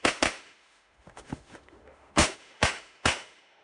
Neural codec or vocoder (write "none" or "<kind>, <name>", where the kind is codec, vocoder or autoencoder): autoencoder, DAC-VAE